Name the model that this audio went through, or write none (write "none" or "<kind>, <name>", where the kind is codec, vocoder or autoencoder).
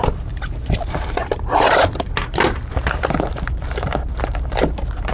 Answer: vocoder, BigVGAN v2